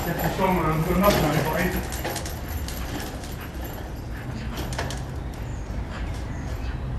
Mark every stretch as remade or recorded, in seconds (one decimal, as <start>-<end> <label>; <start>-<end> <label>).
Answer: 0.0-5.5 recorded; 5.5-6.3 remade; 6.3-7.0 recorded